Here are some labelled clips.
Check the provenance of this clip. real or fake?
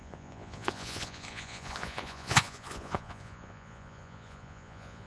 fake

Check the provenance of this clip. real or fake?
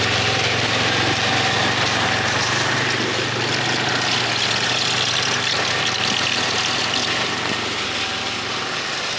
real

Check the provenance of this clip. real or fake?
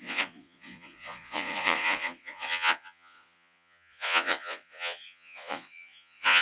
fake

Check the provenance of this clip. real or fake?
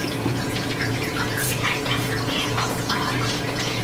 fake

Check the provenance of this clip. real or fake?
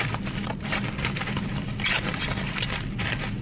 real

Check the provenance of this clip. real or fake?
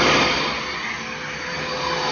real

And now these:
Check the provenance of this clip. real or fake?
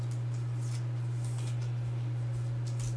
real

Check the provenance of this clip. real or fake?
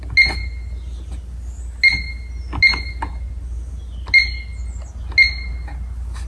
real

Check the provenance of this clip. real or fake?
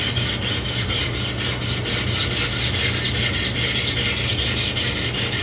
real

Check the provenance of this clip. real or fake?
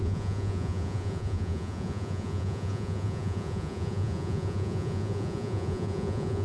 fake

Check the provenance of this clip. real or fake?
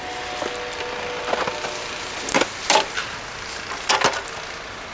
real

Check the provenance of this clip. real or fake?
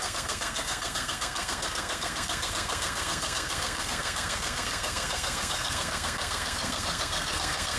fake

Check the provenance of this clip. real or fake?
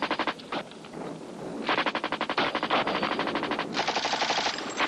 real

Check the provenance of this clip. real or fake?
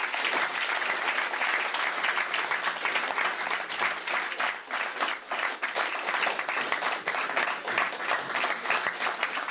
real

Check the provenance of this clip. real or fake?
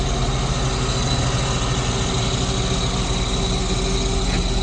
real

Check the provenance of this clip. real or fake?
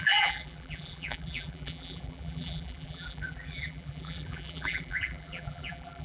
fake